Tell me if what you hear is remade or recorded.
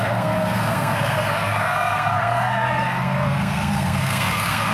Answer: remade